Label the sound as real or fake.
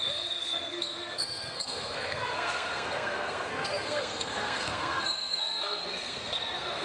fake